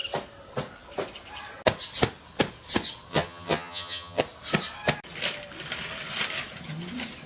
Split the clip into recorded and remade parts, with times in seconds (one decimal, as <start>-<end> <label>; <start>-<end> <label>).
0.0-3.1 recorded; 3.1-4.2 remade; 4.2-7.3 recorded